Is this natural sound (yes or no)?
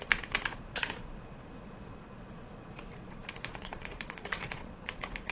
no